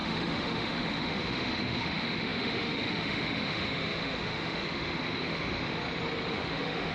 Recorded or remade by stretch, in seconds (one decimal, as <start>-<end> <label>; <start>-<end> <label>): 0.0-5.8 remade; 5.8-6.3 recorded; 6.3-6.9 remade